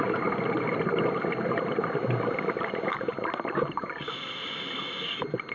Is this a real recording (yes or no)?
yes